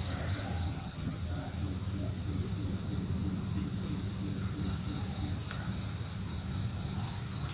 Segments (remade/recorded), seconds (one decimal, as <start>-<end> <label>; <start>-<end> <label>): 0.0-0.7 recorded; 0.7-1.2 remade; 1.2-7.5 recorded